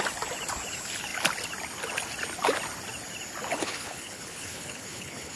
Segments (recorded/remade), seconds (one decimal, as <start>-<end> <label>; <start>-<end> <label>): 0.0-3.5 recorded; 3.5-5.4 remade